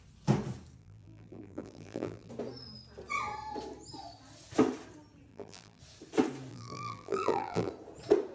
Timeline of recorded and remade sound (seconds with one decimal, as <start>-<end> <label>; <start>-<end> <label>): 0.0-0.8 recorded; 0.8-2.3 remade; 2.3-5.3 recorded; 5.3-5.8 remade; 5.8-6.5 recorded; 6.5-7.7 remade; 7.7-8.3 recorded